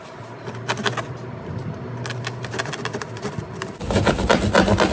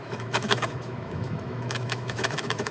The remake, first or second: second